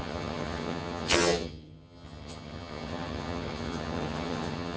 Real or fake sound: fake